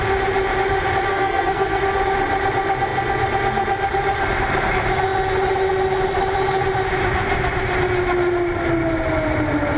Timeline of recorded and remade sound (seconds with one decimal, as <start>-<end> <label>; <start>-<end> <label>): 0.0-1.1 recorded; 1.1-1.8 remade; 1.8-9.8 recorded